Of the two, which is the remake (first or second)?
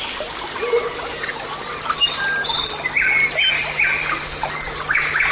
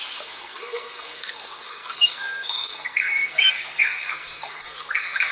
second